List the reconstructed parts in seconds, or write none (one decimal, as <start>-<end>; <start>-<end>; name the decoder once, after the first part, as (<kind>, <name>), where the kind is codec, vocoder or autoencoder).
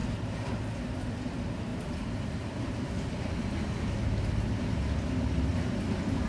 0.0-1.1 (vocoder, BigVGAN v2); 1.7-4.6; 5.5-6.3